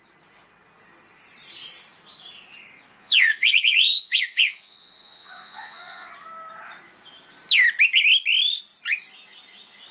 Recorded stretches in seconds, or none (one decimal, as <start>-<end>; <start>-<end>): 0.0-2.9; 6.1-9.9